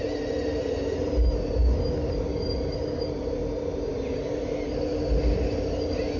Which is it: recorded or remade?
recorded